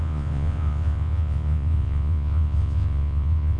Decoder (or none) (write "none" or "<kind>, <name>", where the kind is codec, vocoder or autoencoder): vocoder, Vocos